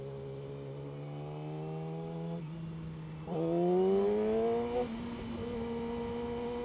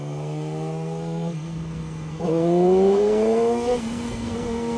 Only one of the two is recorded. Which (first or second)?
first